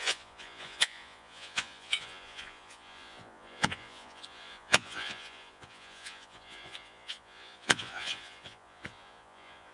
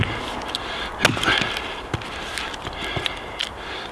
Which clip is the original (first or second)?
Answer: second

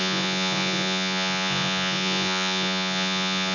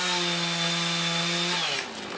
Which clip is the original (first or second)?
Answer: second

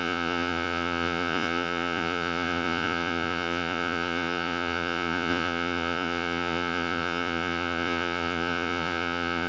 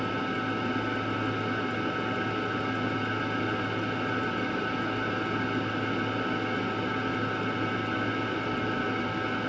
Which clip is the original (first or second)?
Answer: second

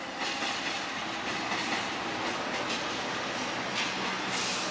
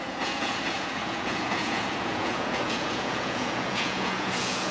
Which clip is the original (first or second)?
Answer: first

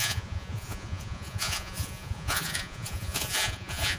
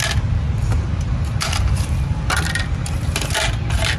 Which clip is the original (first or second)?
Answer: second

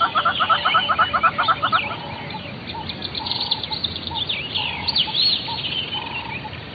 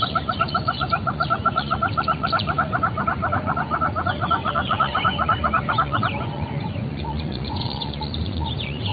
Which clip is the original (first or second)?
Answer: first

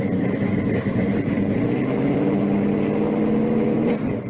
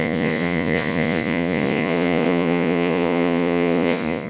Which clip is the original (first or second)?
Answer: first